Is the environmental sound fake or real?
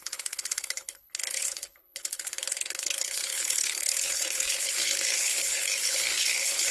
fake